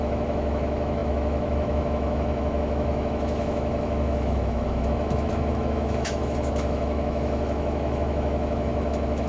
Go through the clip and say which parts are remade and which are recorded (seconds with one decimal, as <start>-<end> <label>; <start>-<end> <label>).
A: 0.0-9.3 remade